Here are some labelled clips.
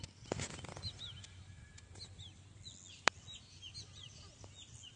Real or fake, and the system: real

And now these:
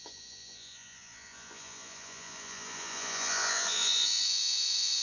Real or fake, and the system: fake, vocoder, Vocos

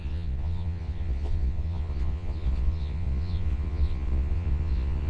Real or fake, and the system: fake, vocoder, Vocos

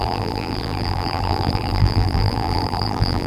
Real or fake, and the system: fake, vocoder, BigVGAN v2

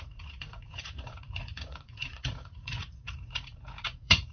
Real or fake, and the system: fake, vocoder, Vocos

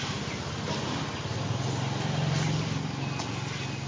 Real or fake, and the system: real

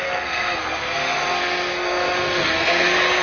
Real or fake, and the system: fake, codec, SNAC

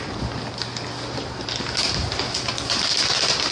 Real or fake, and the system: real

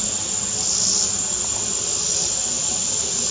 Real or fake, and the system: real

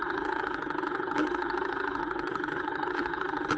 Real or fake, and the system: fake, codec, HILCodec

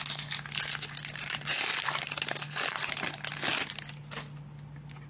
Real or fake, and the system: real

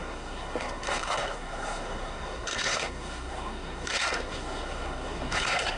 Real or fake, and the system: fake, codec, SNAC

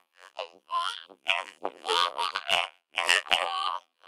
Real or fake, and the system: fake, vocoder, BigVGAN v2